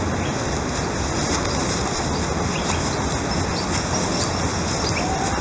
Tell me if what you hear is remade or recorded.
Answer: recorded